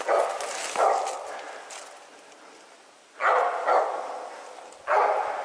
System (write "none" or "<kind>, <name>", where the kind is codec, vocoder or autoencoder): none